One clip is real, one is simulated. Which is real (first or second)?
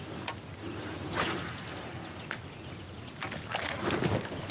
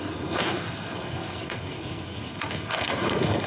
first